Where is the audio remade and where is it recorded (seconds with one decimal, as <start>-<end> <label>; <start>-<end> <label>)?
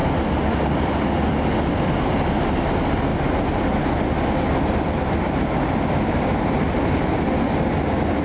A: 0.0-8.2 recorded